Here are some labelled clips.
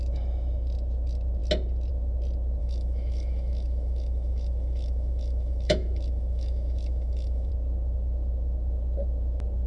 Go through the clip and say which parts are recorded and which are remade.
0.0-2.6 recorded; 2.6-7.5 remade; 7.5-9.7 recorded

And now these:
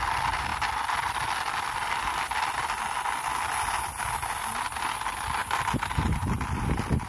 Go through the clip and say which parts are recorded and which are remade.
0.0-7.1 recorded

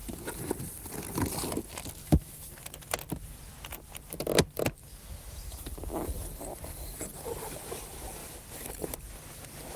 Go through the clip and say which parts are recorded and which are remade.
0.0-2.0 recorded; 2.0-2.5 remade; 2.5-4.9 recorded; 4.9-5.8 remade; 5.8-9.8 recorded

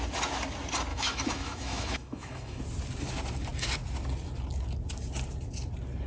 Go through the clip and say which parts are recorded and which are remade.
0.0-0.9 recorded; 0.9-2.6 remade; 2.6-6.1 recorded

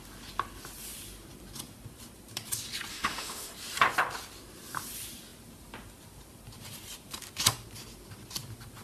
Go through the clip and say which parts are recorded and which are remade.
0.0-2.9 recorded; 2.9-3.5 remade; 3.5-8.8 recorded